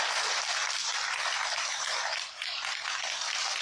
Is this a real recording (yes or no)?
yes